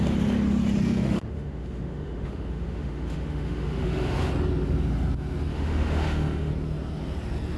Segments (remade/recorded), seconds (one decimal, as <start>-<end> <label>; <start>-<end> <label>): 0.0-0.8 recorded; 0.8-4.3 remade; 4.3-5.5 recorded; 5.5-6.5 remade; 6.5-7.6 recorded